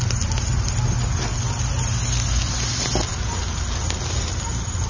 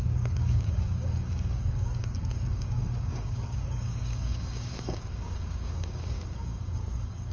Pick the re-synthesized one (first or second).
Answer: second